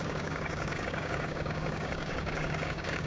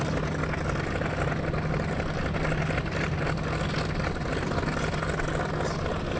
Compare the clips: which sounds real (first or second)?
second